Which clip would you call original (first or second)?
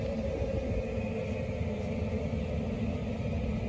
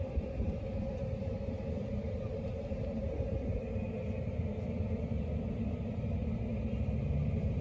first